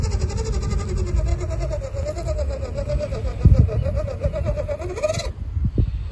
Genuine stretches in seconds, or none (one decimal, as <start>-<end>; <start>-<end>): 0.0-6.1